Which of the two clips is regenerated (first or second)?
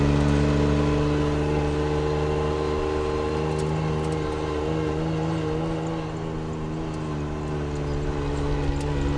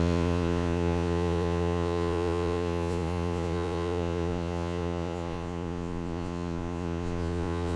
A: second